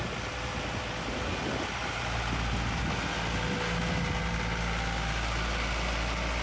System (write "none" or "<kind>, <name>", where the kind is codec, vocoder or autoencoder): none